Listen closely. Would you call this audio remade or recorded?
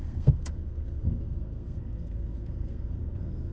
remade